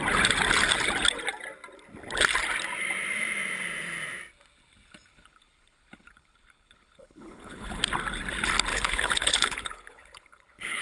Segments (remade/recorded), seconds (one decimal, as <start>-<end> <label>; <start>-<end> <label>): 0.0-5.1 recorded; 5.1-7.8 remade; 7.8-8.7 recorded; 8.7-10.8 remade

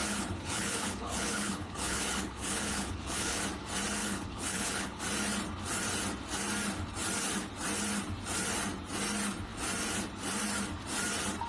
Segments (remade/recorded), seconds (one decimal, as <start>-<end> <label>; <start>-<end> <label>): 0.0-3.4 remade; 3.4-4.0 recorded; 4.0-5.0 remade; 5.0-11.5 recorded